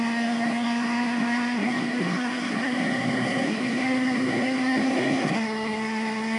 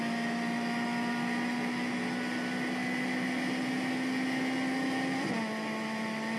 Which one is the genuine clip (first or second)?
second